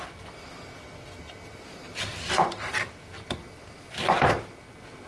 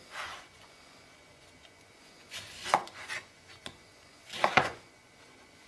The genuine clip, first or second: first